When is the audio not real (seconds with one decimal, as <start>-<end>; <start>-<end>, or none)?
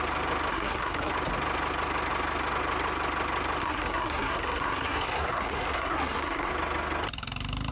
0.5-1.1; 3.6-6.5